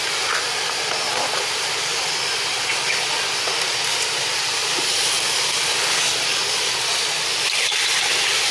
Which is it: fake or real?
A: real